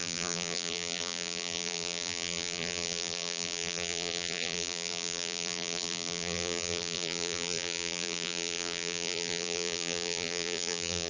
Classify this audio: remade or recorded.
remade